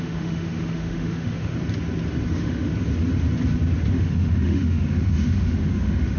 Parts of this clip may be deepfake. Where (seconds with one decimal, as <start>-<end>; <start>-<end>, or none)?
0.0-1.5; 2.3-2.7; 3.9-6.2

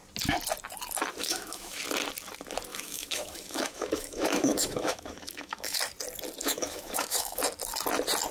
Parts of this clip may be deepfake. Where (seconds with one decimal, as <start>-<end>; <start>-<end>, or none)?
1.2-1.8; 2.7-5.8; 6.4-7.4

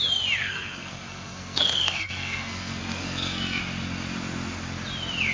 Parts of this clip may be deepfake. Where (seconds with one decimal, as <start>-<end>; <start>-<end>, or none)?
0.4-3.6